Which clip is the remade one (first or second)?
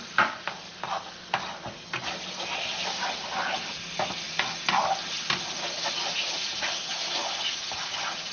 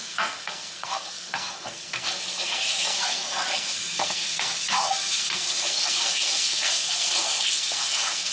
second